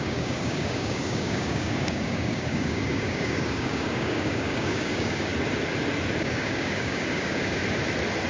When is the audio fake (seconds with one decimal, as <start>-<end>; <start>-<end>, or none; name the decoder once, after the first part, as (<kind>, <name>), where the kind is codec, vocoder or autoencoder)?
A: 0.0-5.3 (codec, DAC); 6.2-7.6